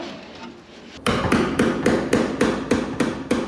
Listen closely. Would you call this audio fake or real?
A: real